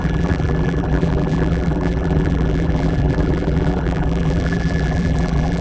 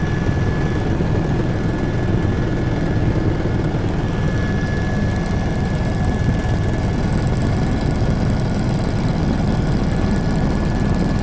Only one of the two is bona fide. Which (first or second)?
second